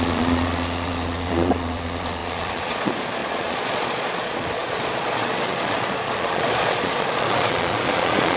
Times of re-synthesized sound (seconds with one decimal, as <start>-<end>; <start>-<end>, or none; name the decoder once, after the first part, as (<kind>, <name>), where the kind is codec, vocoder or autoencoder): 0.0-8.4 (vocoder, Vocos)